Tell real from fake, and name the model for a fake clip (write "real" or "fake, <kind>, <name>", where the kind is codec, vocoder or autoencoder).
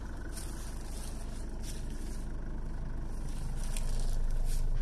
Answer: real